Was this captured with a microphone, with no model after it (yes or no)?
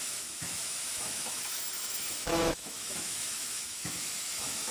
no